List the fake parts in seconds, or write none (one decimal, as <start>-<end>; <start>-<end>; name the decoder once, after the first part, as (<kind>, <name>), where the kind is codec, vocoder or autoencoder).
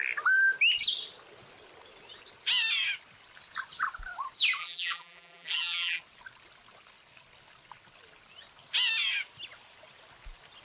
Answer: 4.6-6.0 (vocoder, BigVGAN v2)